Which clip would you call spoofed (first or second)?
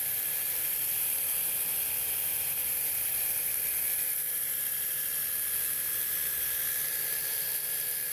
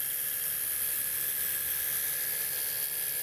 first